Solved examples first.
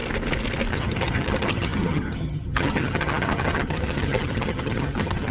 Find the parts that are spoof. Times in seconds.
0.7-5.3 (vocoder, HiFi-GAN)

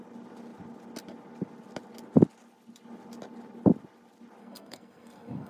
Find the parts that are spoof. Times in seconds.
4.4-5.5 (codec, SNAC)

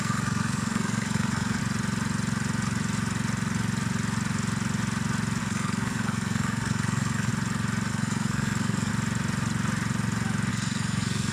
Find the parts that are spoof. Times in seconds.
0.0-1.6 (codec, SNAC); 5.4-7.3; 7.9-8.9; 10.5-11.3

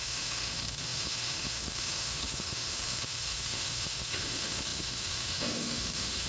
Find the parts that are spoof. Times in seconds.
0.0-6.3 (autoencoder, DAC-VAE)